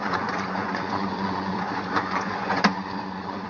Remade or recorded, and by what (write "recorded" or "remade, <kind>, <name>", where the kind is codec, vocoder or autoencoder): remade, vocoder, Vocos